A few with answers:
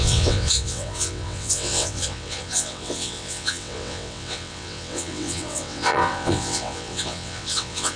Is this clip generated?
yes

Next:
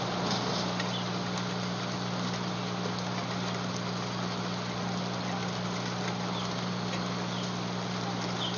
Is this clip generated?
no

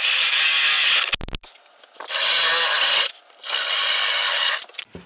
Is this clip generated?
no